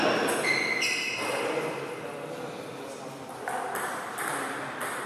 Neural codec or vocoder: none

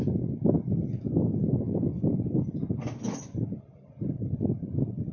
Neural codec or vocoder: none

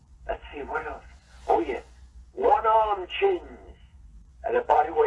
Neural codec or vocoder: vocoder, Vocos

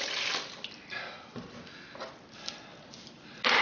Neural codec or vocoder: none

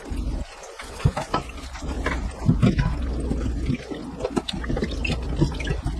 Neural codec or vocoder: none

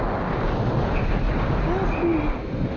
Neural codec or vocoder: none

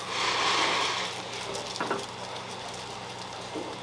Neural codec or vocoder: none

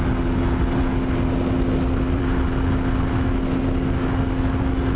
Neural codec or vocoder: none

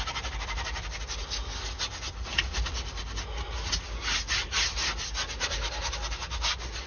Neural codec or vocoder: none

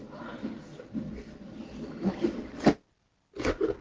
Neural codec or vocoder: none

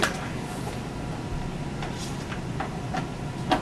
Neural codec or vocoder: none